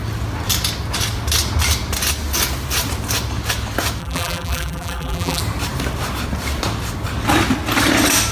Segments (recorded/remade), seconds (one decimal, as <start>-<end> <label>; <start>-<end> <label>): 0.0-4.0 recorded; 4.0-5.4 remade; 5.4-8.3 recorded